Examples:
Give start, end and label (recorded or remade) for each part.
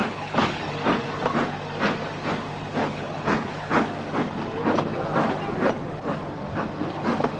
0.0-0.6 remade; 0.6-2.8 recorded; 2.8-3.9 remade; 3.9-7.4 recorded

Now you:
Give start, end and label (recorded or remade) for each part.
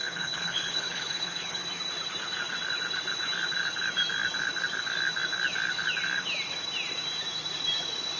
0.0-1.6 remade; 1.6-8.2 recorded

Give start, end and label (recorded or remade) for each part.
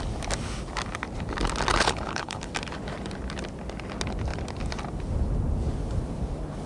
0.0-1.7 recorded; 1.7-2.5 remade; 2.5-6.7 recorded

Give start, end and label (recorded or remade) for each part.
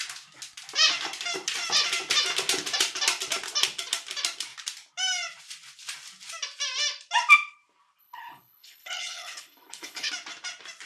0.0-8.0 recorded; 8.0-10.1 remade; 10.1-10.9 recorded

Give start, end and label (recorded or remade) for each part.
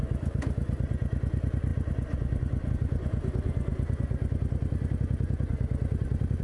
0.0-6.4 recorded